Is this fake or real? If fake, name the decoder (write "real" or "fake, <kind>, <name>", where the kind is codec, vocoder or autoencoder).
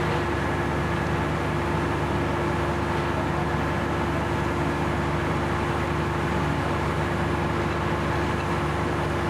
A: real